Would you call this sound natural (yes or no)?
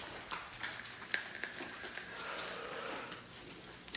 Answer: yes